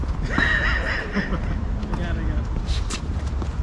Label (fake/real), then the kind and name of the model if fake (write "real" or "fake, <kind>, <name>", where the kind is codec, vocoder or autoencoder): real